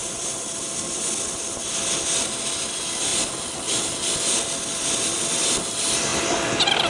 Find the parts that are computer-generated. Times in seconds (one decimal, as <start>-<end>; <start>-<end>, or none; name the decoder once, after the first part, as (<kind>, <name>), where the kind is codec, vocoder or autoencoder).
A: 3.1-3.6 (vocoder, BigVGAN v2)